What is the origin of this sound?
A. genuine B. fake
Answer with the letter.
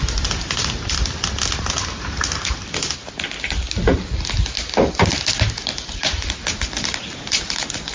A